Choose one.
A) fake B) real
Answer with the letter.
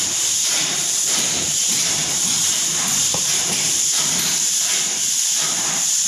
A